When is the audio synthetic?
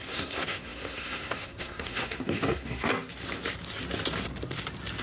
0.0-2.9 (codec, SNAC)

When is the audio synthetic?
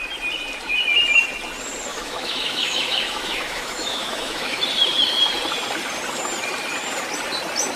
1.9-4.6 (autoencoder, DAC-VAE)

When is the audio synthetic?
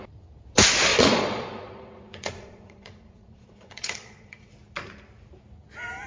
0.9-4.5 (vocoder, Vocos)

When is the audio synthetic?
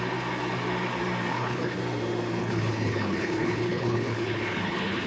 1.3-1.8 (codec, HILCodec); 2.4-5.1